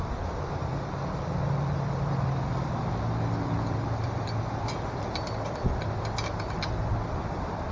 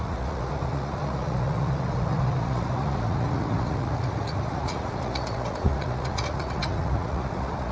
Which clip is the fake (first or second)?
second